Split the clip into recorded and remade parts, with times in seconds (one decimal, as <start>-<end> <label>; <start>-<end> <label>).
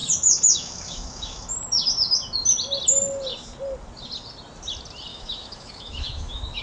0.0-1.4 remade; 1.4-5.1 recorded; 5.1-6.6 remade